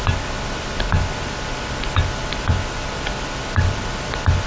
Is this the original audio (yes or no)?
yes